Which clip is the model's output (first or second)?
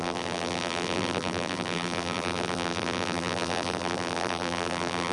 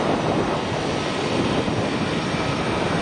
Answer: first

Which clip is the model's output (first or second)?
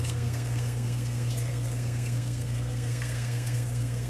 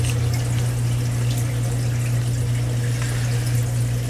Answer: first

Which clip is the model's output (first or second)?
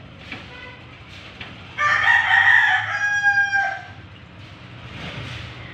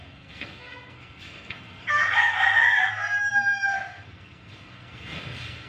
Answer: second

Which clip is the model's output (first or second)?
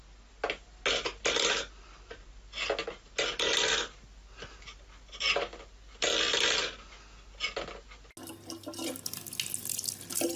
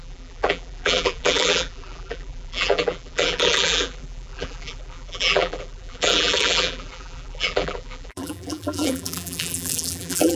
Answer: second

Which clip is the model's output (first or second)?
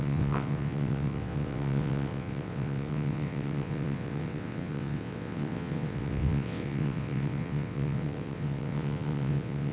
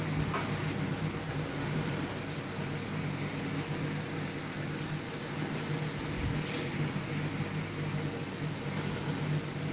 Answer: first